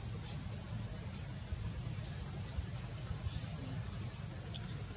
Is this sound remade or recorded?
recorded